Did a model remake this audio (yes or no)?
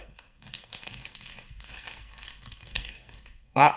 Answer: yes